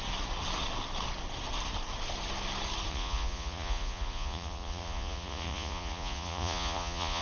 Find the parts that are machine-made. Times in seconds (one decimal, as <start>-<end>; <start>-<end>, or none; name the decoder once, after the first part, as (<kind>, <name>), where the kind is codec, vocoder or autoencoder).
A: 2.9-7.2 (vocoder, Vocos)